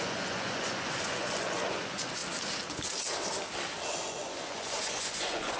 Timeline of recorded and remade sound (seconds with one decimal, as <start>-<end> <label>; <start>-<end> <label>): 0.0-2.2 remade; 2.2-3.9 recorded; 3.9-5.6 remade